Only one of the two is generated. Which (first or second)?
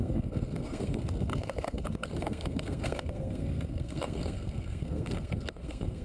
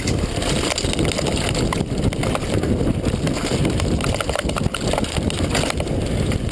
first